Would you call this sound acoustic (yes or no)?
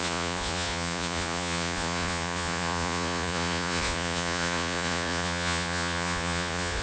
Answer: no